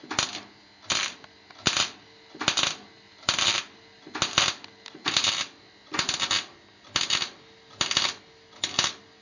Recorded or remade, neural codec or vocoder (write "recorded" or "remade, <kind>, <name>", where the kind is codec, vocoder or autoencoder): recorded